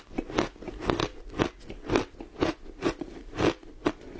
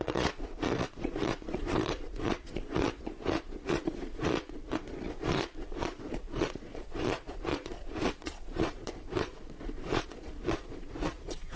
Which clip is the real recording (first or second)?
first